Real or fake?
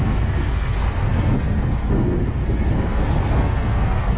fake